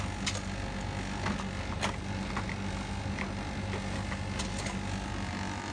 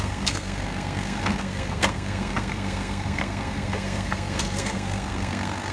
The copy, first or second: second